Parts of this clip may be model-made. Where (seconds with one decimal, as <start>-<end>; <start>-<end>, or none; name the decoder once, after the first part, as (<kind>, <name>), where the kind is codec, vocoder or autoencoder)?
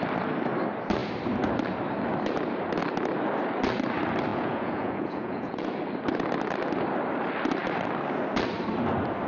4.3-5.7 (vocoder, Vocos)